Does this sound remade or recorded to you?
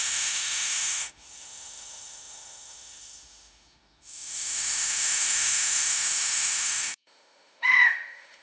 remade